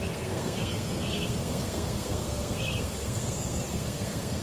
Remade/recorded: remade